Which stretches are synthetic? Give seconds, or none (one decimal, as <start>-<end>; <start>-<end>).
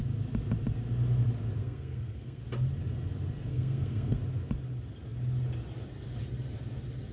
1.6-2.4; 3.5-4.2